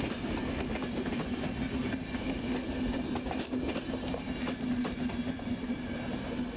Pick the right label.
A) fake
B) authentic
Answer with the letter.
B